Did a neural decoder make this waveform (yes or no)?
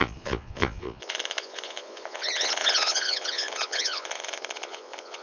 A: yes